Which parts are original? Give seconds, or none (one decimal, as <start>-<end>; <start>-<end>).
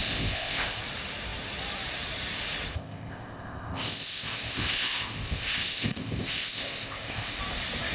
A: 0.8-2.7; 7.4-7.9